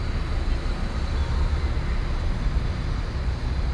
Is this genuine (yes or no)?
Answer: yes